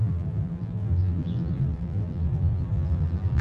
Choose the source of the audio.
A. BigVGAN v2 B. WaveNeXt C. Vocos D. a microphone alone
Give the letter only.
A